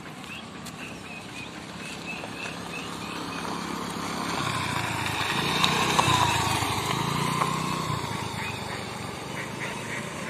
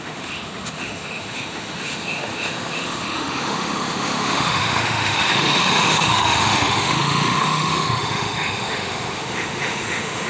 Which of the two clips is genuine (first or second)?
first